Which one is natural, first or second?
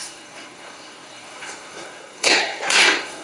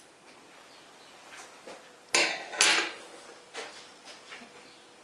second